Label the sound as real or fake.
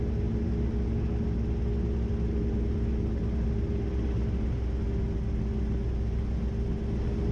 real